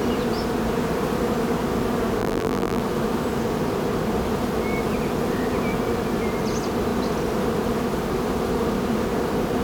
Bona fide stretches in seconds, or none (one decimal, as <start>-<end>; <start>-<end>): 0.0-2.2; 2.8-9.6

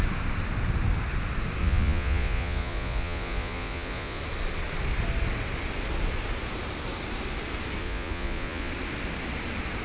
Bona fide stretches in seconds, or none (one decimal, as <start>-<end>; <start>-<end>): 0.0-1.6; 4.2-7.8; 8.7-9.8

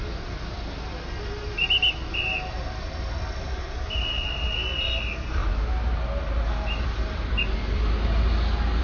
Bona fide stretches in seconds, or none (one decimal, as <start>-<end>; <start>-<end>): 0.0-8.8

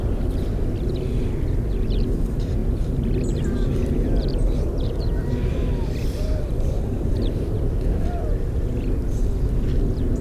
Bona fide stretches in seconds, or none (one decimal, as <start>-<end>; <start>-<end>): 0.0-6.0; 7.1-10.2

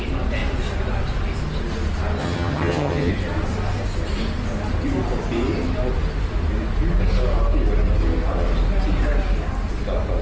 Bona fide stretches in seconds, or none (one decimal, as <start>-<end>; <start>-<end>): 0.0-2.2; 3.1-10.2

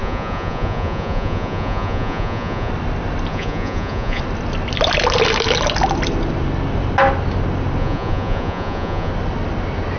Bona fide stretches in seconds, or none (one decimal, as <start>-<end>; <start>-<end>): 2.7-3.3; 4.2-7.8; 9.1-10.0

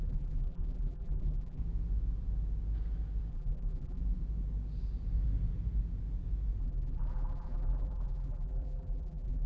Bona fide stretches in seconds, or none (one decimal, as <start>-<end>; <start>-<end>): 1.6-3.3; 4.0-6.6

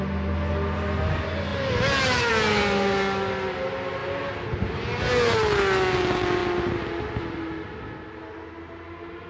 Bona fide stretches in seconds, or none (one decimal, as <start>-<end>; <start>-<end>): 0.0-9.3